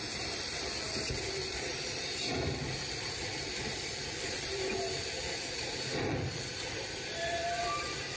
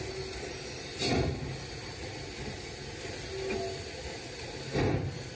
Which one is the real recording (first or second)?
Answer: second